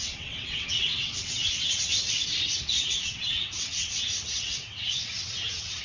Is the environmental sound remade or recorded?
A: remade